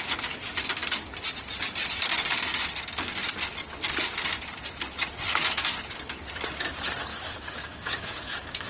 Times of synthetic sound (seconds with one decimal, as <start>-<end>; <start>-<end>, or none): 7.1-8.7